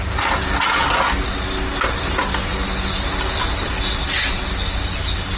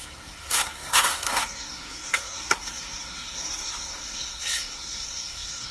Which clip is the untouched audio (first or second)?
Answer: first